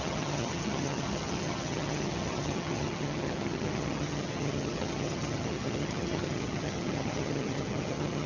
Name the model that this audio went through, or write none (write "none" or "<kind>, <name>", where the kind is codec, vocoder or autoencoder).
vocoder, HiFi-GAN